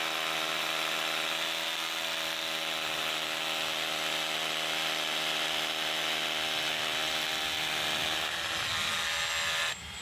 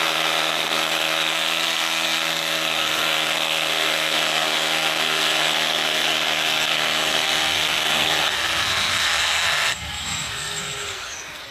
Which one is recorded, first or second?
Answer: first